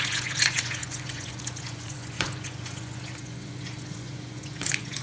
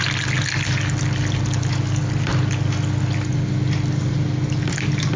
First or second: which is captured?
second